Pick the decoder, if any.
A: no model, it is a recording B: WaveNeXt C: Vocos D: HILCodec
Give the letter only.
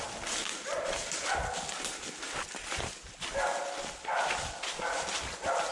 A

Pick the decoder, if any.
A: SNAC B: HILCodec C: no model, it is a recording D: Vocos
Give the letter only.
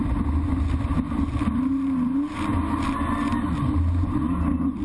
C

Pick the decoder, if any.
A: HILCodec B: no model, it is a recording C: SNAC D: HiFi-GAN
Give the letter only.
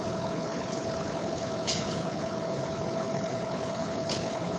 A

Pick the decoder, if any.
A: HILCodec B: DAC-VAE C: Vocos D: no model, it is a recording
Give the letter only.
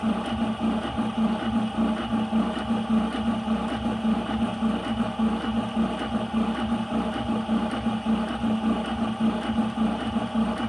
D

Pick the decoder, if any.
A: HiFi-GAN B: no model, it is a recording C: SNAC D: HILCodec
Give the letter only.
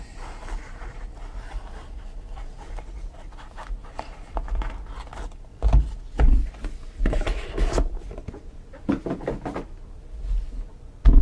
B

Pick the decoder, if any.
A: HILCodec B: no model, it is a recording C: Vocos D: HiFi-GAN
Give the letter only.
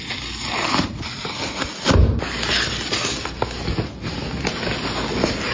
B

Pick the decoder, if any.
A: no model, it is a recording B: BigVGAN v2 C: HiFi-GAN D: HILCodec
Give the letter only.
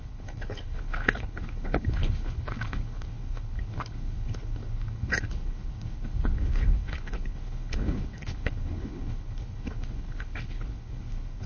D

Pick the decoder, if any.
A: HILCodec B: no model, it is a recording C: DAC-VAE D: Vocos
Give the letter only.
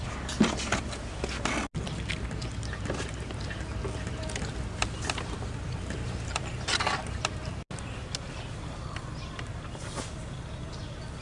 B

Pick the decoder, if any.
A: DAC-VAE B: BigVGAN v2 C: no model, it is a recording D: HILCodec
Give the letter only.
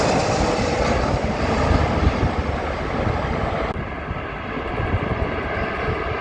C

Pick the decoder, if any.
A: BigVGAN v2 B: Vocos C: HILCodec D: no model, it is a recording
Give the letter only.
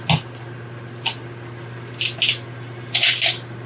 D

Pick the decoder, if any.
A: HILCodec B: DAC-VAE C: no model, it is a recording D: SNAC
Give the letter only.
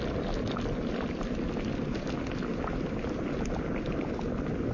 C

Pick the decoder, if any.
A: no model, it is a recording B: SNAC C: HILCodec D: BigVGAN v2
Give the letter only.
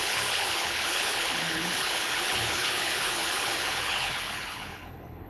C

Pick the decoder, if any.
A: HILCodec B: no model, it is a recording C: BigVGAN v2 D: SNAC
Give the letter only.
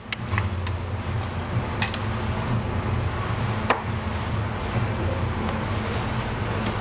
B